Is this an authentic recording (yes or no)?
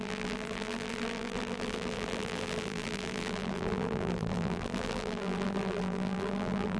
no